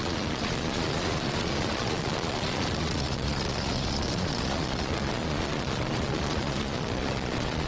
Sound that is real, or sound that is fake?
fake